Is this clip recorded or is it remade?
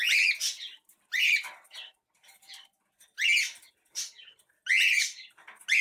recorded